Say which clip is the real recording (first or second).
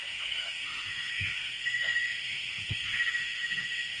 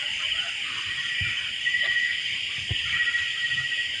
second